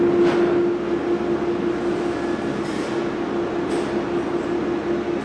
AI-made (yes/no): no